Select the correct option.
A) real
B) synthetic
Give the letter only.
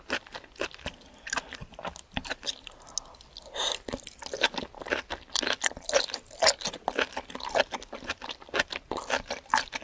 A